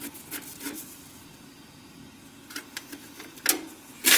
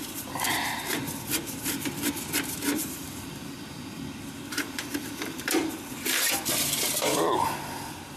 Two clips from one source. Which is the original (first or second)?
first